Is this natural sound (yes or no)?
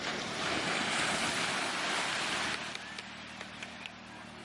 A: yes